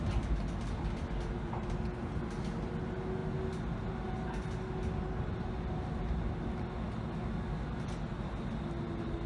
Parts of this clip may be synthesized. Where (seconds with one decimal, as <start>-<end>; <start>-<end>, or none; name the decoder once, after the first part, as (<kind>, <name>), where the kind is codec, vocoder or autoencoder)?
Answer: none